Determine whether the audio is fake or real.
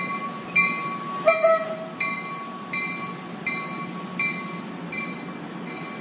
real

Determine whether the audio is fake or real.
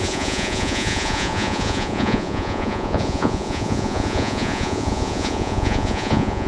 fake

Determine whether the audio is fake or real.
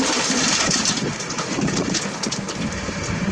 real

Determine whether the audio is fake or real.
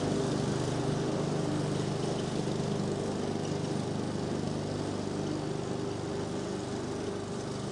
real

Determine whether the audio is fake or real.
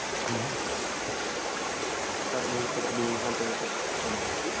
real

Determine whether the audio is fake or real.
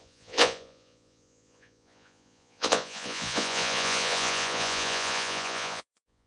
fake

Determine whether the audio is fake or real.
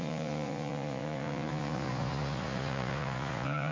fake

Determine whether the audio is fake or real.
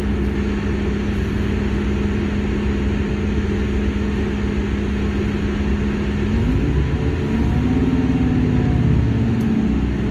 real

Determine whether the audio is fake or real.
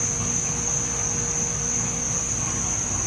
real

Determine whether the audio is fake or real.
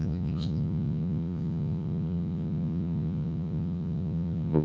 fake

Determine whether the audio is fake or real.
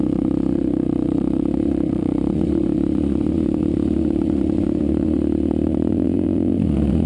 fake